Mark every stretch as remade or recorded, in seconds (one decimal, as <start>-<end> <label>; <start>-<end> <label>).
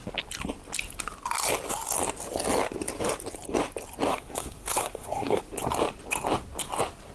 0.0-4.1 recorded; 4.1-5.4 remade; 5.4-7.1 recorded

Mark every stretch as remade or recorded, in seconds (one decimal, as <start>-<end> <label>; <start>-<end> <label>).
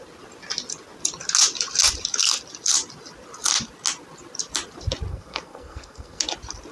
0.0-5.1 recorded; 5.1-6.2 remade; 6.2-6.7 recorded